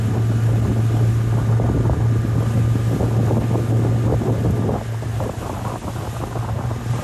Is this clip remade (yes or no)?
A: no